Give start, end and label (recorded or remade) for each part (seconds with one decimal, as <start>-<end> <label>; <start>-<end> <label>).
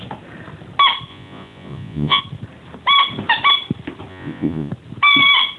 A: 0.0-1.1 recorded; 1.1-2.2 remade; 2.2-4.1 recorded; 4.1-4.7 remade; 4.7-5.6 recorded